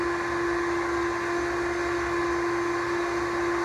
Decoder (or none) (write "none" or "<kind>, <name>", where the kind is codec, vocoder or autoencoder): none